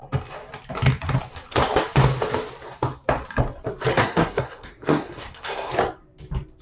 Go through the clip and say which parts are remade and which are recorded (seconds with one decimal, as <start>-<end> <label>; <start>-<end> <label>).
0.0-3.9 recorded; 3.9-5.7 remade; 5.7-6.6 recorded

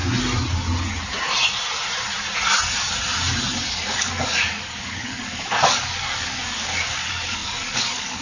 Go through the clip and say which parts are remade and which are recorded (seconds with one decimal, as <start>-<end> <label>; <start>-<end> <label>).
0.0-3.7 recorded; 3.7-8.2 remade

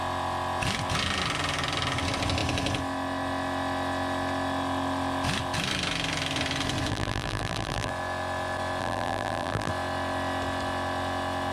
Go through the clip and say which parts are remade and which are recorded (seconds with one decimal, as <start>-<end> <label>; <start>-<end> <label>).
0.0-6.9 recorded; 6.9-7.9 remade; 7.9-8.8 recorded; 8.8-9.7 remade; 9.7-11.5 recorded

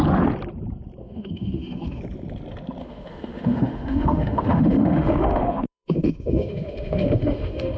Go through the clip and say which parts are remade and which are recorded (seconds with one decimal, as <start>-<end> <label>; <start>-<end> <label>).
0.0-1.0 recorded; 1.0-2.0 remade; 2.0-2.8 recorded; 2.8-7.8 remade